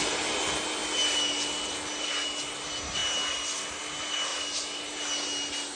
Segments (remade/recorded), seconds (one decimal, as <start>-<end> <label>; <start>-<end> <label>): 0.0-5.8 recorded